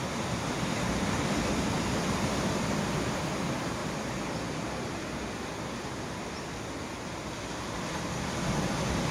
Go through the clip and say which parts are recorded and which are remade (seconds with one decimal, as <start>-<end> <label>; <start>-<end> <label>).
0.0-9.1 recorded